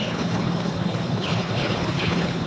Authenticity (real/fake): fake